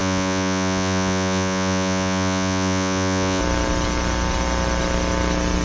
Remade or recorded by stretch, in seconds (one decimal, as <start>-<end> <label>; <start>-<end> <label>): 0.0-3.4 remade; 3.4-5.6 recorded